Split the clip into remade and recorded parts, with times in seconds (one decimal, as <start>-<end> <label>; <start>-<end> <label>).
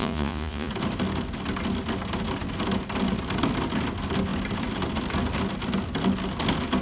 0.0-0.7 remade; 0.7-6.8 recorded